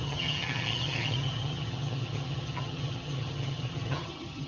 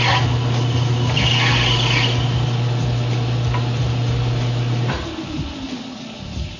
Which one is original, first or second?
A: second